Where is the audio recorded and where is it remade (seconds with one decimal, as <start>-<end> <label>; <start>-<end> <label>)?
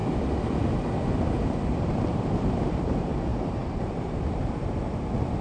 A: 0.0-2.8 recorded; 2.8-5.4 remade